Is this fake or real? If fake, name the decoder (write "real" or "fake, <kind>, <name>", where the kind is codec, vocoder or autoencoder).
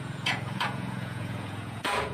fake, vocoder, Vocos